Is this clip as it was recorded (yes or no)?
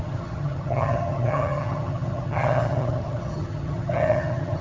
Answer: no